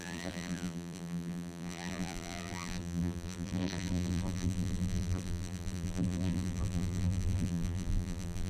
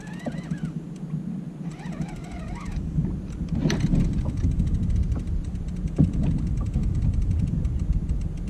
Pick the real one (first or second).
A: second